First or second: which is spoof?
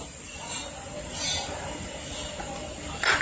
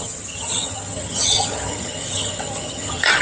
second